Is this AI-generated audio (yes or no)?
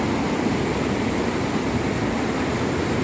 no